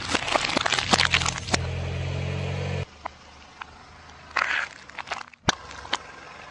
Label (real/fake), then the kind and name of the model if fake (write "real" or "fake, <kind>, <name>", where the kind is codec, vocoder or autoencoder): real